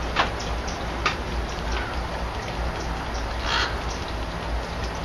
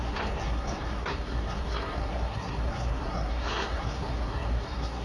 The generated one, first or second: second